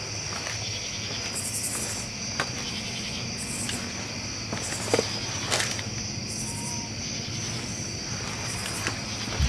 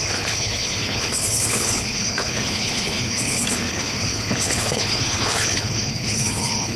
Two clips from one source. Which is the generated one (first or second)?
second